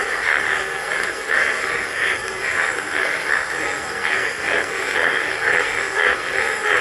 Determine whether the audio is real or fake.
fake